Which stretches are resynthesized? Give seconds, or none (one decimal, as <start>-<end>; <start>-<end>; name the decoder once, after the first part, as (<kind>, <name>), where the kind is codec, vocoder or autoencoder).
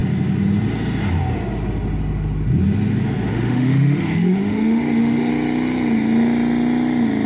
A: 3.3-5.3 (autoencoder, DAC-VAE)